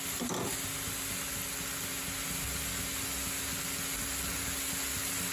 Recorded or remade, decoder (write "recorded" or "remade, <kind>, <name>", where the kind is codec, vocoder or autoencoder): recorded